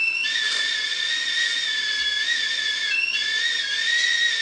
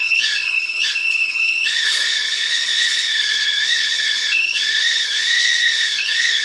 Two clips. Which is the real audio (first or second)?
first